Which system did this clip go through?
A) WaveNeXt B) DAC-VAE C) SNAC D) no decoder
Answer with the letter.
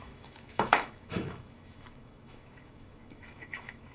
B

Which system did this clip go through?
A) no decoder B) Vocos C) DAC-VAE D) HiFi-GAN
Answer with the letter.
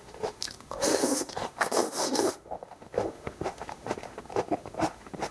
C